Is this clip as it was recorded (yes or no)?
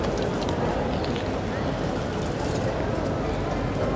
yes